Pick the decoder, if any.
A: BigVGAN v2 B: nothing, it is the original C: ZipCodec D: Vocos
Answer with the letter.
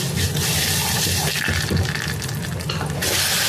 B